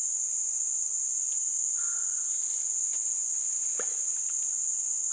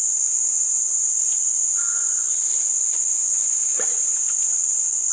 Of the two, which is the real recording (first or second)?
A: first